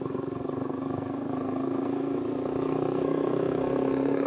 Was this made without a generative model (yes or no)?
no